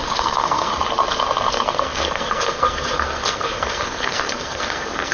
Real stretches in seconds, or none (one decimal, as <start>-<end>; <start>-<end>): 0.7-1.5